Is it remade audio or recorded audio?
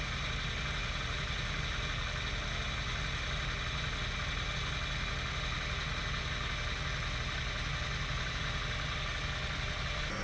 recorded